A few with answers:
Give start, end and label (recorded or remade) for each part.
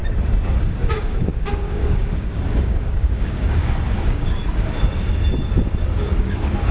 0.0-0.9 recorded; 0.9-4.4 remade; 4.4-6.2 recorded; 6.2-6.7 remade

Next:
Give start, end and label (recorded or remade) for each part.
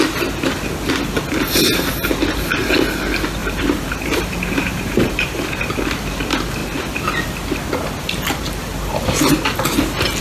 0.0-3.4 recorded; 3.4-5.6 remade; 5.6-10.2 recorded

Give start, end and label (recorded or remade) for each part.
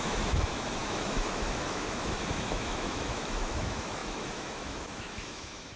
0.0-5.8 remade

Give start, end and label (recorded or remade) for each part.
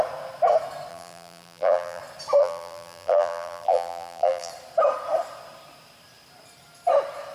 0.0-0.9 recorded; 0.9-2.0 remade; 2.0-2.4 recorded; 2.4-4.5 remade; 4.5-7.3 recorded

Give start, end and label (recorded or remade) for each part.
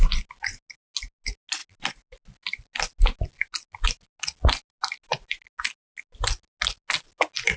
0.0-7.6 recorded